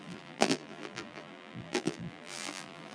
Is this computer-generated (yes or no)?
yes